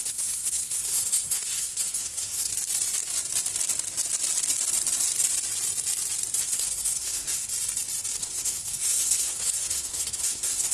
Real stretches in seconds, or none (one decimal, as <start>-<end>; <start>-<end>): 2.5-6.4; 7.5-8.2